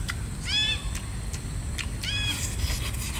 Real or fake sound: real